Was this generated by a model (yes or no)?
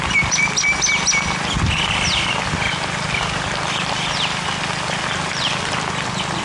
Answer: no